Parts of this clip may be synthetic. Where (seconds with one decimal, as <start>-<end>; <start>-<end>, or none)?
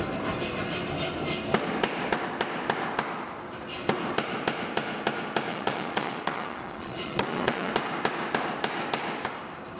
5.5-7.7